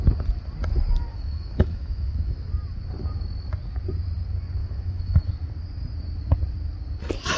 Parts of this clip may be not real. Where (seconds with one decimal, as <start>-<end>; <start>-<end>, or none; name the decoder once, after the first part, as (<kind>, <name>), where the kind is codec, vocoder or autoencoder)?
1.1-2.5 (autoencoder, DAC-VAE); 4.6-5.3

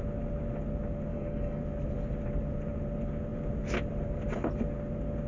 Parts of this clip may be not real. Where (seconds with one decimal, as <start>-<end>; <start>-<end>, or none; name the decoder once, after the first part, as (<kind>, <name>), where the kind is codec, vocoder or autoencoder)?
1.1-1.6 (codec, DAC)

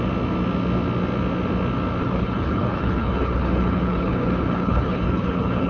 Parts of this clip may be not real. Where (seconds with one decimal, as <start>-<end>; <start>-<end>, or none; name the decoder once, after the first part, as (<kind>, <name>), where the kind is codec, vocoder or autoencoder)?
2.0-5.7 (codec, HILCodec)